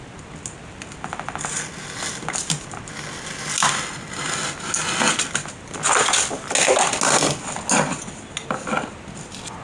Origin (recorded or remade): recorded